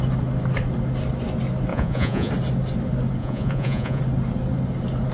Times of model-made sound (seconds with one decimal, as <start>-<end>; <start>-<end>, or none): 1.7-2.3; 3.2-4.0